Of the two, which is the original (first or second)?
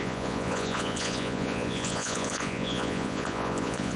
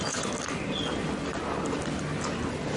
second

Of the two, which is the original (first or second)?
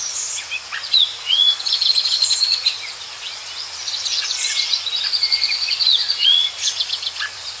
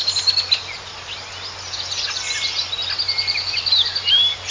second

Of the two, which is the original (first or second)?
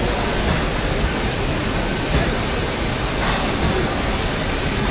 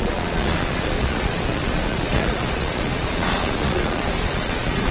first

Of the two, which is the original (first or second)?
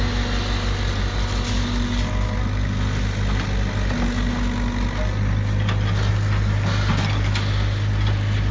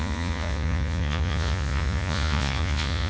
first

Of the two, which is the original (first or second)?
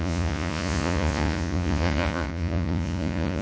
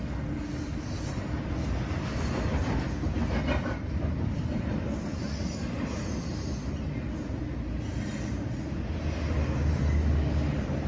second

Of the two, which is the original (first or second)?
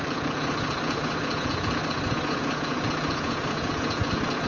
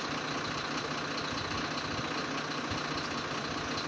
second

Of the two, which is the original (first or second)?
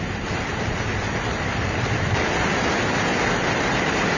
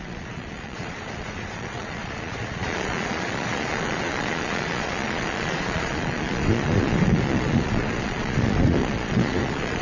first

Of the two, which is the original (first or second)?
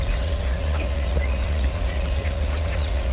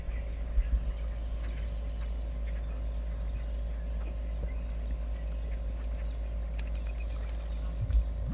second